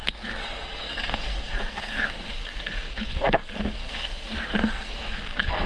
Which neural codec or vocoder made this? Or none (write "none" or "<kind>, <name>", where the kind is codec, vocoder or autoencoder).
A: codec, SNAC